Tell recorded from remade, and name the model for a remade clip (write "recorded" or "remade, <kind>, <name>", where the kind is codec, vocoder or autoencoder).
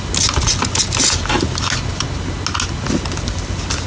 recorded